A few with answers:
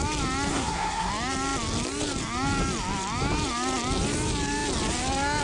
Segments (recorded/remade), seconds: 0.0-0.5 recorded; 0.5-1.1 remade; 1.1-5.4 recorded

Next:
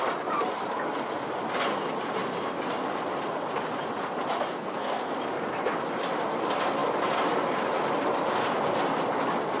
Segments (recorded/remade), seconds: 0.0-4.5 recorded; 4.5-5.1 remade; 5.1-9.6 recorded

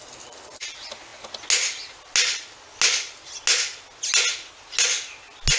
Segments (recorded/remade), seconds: 0.0-5.6 recorded

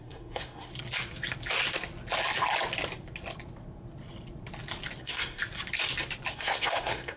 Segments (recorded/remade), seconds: 0.0-0.7 remade; 0.7-5.0 recorded; 5.0-5.4 remade; 5.4-6.3 recorded; 6.3-7.2 remade

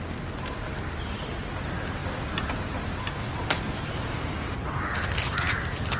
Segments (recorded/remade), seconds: 0.0-6.0 recorded

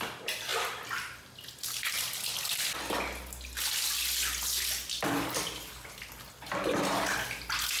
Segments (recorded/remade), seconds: 0.0-7.8 recorded